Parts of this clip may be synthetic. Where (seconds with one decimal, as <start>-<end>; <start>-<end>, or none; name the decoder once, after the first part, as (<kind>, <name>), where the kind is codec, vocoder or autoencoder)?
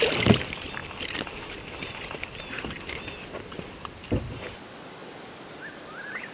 none